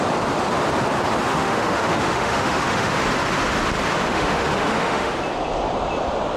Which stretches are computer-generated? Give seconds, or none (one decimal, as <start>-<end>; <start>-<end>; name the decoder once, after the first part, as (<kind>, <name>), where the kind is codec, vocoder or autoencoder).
1.3-2.9 (autoencoder, DAC-VAE); 4.1-5.1